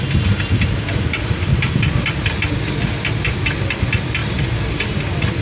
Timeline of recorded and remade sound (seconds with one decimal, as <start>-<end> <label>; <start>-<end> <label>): 0.0-5.4 recorded